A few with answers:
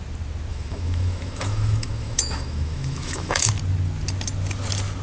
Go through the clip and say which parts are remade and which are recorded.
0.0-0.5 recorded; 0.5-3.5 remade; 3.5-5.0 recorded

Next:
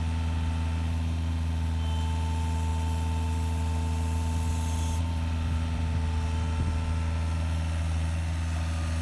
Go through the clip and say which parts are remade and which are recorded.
0.0-9.0 recorded

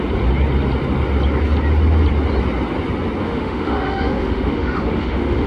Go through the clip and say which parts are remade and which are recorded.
0.0-3.2 recorded; 3.2-5.5 remade

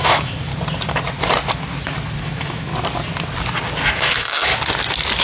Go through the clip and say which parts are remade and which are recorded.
0.0-0.5 remade; 0.5-2.2 recorded; 2.2-2.7 remade; 2.7-3.9 recorded; 3.9-4.5 remade; 4.5-5.2 recorded

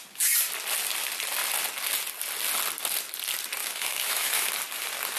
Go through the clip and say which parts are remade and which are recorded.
0.0-3.6 recorded; 3.6-4.5 remade; 4.5-5.2 recorded

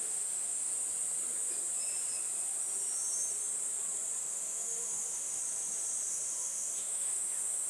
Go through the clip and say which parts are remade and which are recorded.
0.0-0.7 remade; 0.7-4.2 recorded; 4.2-5.4 remade; 5.4-6.1 recorded; 6.1-7.7 remade